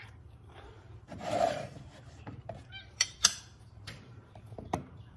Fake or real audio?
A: fake